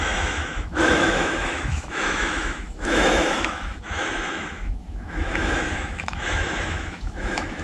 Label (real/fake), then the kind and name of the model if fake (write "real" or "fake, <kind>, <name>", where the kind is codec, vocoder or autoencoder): fake, autoencoder, DAC-VAE